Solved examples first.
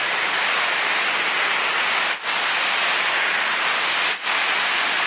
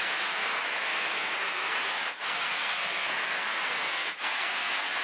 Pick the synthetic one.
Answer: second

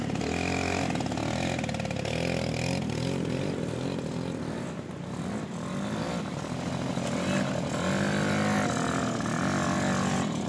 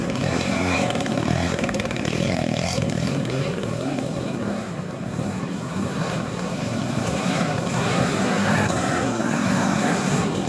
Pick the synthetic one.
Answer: second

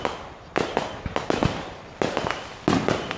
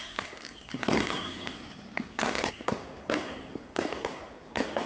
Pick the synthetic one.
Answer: second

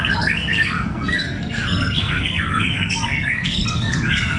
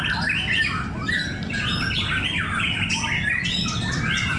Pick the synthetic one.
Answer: first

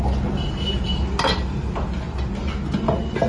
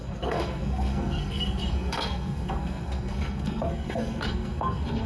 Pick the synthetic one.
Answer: second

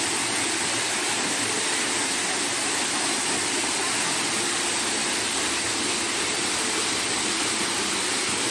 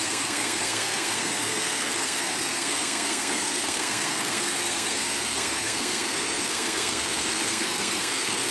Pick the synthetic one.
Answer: second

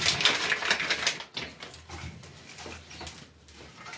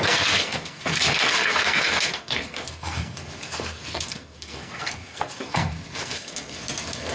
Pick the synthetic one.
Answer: second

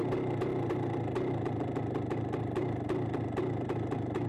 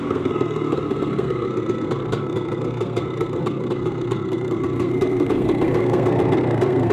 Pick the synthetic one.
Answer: second